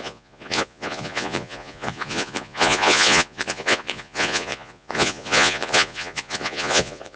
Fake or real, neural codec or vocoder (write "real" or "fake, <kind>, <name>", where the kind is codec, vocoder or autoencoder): fake, vocoder, Vocos